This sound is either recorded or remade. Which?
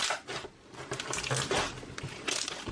remade